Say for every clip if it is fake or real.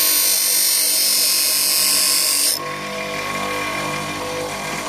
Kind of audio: real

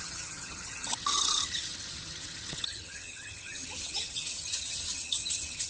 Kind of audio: fake